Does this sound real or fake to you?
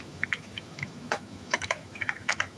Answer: fake